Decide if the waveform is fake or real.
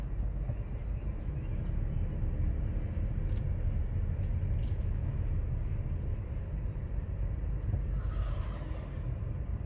real